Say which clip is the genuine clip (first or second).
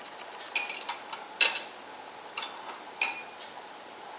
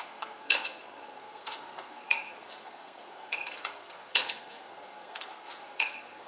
first